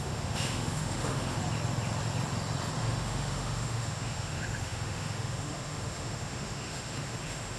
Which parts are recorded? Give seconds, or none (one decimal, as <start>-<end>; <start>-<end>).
1.4-2.8